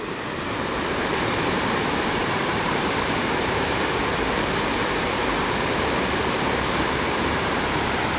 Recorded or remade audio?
remade